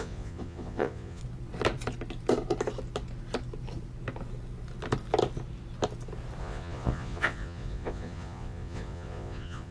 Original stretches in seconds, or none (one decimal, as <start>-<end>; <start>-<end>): 1.2-6.4